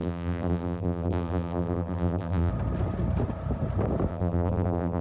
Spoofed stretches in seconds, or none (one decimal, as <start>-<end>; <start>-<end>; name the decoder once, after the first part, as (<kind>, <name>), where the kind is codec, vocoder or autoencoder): 0.0-2.5 (vocoder, BigVGAN v2); 4.1-5.0